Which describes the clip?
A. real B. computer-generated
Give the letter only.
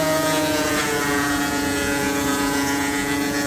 B